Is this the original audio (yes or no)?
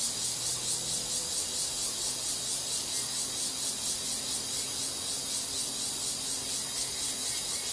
yes